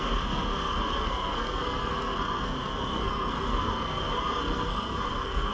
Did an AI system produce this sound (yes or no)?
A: yes